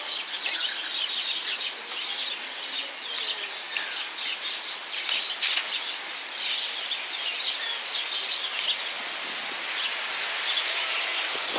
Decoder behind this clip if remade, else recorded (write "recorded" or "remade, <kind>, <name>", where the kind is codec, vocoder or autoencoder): recorded